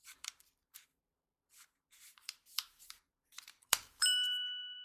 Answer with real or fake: fake